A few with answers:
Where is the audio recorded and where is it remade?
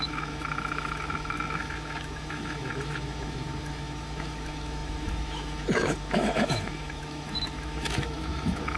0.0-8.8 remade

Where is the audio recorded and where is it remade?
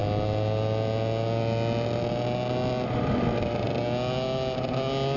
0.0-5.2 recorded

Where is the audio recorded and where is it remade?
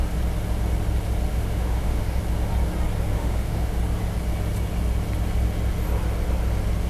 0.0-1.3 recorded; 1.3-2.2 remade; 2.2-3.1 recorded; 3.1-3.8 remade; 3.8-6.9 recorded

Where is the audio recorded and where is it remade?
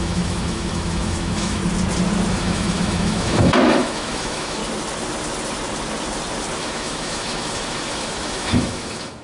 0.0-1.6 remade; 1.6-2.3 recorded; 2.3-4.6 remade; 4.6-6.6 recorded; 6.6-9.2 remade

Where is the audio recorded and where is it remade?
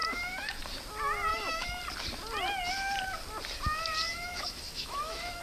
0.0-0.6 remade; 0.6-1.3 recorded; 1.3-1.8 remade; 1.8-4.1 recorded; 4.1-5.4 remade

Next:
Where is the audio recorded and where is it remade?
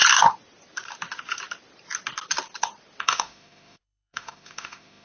0.0-3.0 recorded; 3.0-5.0 remade